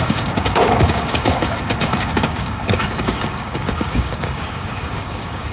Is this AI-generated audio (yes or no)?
yes